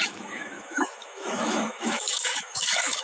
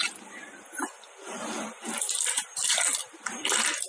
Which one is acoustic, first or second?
second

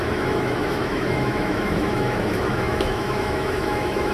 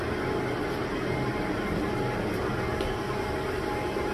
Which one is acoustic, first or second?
second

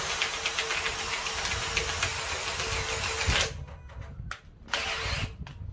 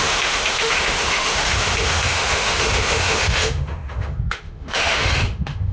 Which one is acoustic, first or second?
first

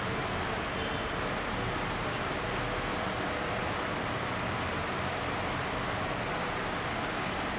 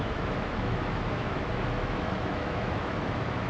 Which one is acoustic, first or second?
first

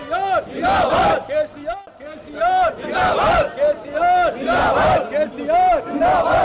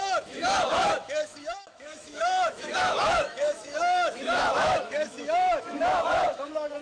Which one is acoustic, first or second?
first